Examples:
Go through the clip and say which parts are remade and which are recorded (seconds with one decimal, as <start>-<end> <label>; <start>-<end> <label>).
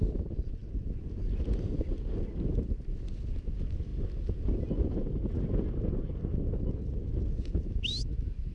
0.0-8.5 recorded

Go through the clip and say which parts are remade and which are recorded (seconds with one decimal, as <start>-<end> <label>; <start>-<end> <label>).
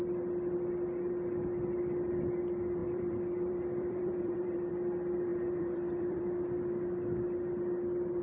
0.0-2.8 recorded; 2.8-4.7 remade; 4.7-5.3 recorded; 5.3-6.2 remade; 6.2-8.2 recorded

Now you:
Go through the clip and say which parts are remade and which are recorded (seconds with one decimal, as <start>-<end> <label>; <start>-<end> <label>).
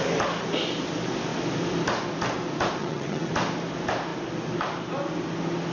0.0-2.8 recorded; 2.8-3.3 remade; 3.3-5.7 recorded